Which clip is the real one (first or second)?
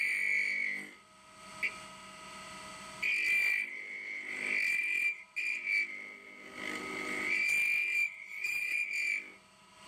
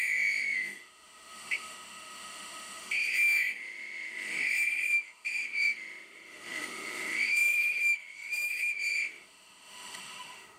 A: first